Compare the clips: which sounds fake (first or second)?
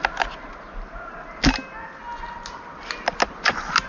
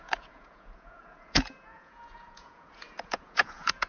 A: second